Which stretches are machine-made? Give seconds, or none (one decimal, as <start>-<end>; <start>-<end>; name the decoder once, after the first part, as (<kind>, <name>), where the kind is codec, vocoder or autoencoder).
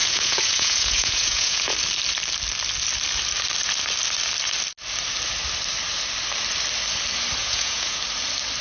0.0-1.7 (vocoder, Vocos); 7.4-8.0